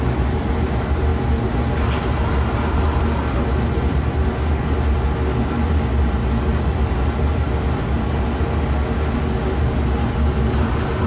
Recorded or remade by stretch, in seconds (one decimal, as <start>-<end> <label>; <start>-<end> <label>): 0.0-11.1 recorded